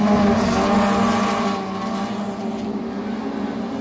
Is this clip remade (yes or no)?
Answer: no